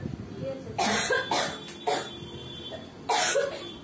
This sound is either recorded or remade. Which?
recorded